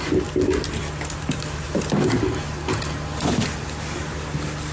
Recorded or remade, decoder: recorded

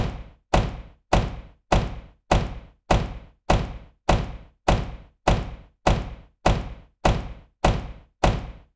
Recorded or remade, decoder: recorded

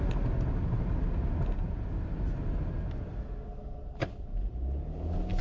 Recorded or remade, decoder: recorded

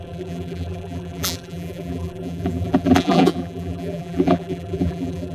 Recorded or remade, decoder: remade, vocoder, BigVGAN v2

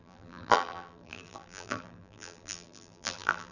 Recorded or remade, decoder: remade, vocoder, BigVGAN v2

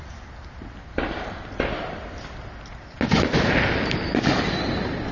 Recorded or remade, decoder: recorded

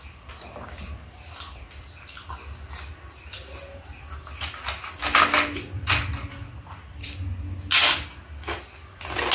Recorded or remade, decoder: recorded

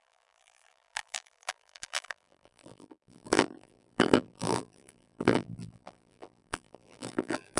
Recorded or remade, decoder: remade, vocoder, BigVGAN v2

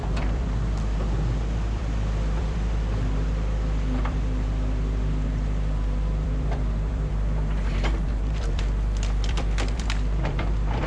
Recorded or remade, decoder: remade, vocoder, BigVGAN v2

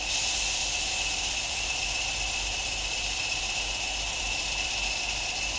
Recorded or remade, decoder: remade, vocoder, BigVGAN v2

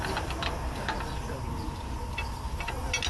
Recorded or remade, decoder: recorded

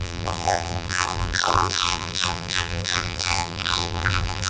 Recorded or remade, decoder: remade, vocoder, BigVGAN v2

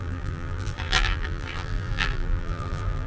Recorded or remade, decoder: remade, vocoder, BigVGAN v2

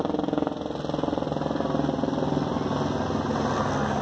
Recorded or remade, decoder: recorded